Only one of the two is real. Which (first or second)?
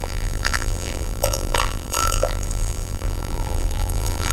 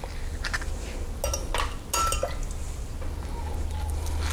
second